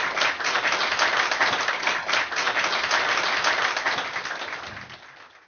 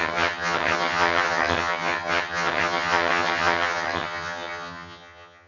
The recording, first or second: first